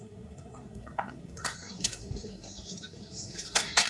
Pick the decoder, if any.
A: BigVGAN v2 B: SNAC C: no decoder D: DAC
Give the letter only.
B